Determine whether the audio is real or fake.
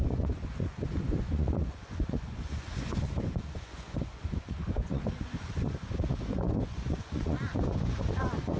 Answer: fake